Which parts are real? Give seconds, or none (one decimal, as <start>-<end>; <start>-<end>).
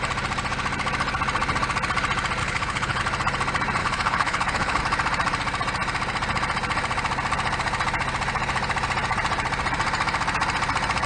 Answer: 0.0-2.4; 3.0-3.8; 4.8-11.1